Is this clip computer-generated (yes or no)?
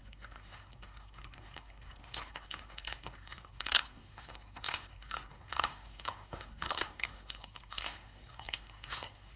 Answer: yes